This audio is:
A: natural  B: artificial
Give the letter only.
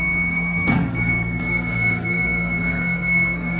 B